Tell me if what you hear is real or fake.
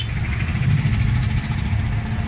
real